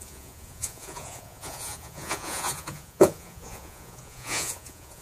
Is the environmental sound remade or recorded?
remade